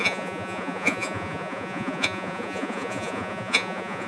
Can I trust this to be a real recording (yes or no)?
no